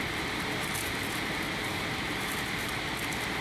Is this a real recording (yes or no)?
yes